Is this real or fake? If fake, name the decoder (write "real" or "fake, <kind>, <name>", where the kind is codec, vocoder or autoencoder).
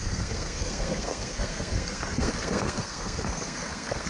fake, codec, SNAC